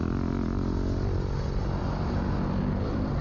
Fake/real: real